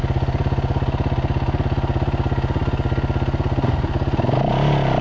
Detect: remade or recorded recorded